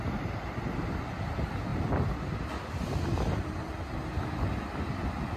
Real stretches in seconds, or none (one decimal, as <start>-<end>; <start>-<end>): 0.0-5.4